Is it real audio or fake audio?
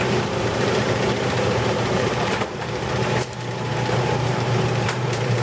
fake